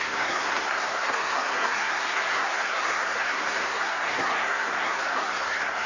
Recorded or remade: remade